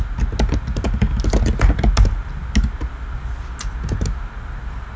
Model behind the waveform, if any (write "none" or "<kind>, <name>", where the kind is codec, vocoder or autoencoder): none